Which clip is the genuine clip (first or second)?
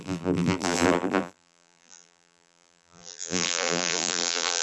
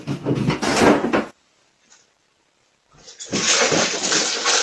second